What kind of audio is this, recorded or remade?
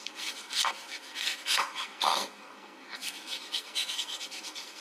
remade